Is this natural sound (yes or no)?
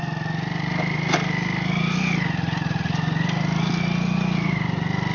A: yes